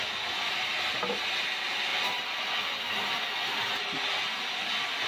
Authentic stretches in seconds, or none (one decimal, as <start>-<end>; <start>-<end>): 0.0-5.1